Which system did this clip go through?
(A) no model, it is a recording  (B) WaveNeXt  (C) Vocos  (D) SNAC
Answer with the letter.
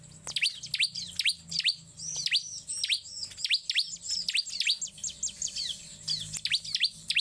A